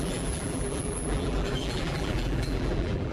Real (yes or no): no